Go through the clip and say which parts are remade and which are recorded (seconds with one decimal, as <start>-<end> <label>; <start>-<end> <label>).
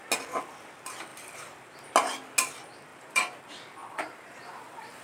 0.0-2.9 recorded; 2.9-3.4 remade; 3.4-3.8 recorded; 3.8-5.0 remade